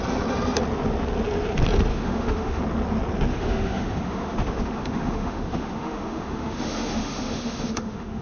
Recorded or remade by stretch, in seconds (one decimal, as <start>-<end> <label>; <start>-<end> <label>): 0.0-1.9 recorded; 1.9-2.6 remade; 2.6-3.3 recorded; 3.3-8.2 remade